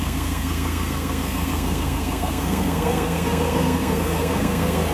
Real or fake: fake